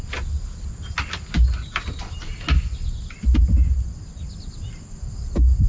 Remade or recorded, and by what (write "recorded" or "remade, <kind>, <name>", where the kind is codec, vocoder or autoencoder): recorded